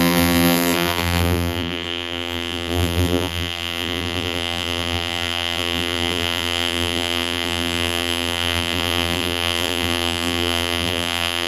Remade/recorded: remade